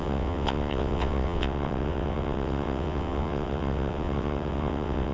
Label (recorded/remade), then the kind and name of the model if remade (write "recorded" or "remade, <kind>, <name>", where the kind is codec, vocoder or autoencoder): remade, vocoder, WaveNeXt